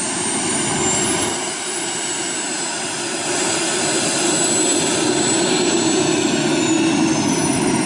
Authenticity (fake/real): real